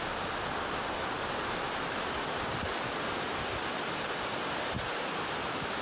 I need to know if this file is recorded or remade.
recorded